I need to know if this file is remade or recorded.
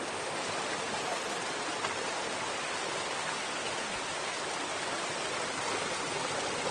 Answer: recorded